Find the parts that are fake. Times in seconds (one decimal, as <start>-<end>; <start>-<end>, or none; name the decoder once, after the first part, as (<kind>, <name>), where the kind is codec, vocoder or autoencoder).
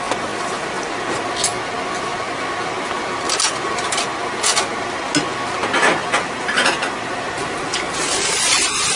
none